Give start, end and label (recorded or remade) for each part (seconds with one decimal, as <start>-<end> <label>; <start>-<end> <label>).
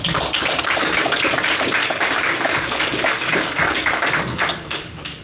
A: 0.0-0.8 recorded; 0.8-1.3 remade; 1.3-1.8 recorded; 1.8-5.2 remade